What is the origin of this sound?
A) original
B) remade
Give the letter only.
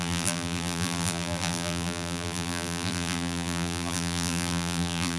B